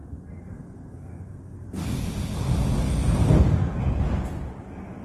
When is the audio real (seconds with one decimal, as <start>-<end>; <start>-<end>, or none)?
0.0-0.5; 1.8-5.0